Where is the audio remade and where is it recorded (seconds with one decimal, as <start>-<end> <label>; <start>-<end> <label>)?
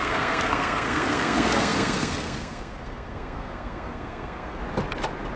0.0-4.6 remade; 4.6-5.4 recorded